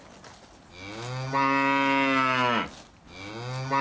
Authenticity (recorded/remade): recorded